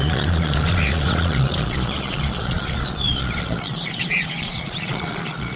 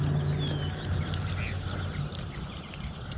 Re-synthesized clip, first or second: first